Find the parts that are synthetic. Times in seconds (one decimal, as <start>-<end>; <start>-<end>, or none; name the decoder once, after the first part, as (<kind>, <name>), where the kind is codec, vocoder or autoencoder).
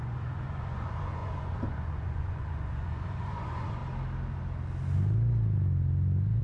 0.0-3.8 (vocoder, Vocos)